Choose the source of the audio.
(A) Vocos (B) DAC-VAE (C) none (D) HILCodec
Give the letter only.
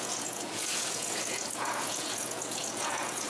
A